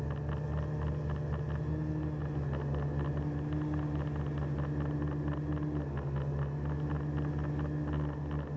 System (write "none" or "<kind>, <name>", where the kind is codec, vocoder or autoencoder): none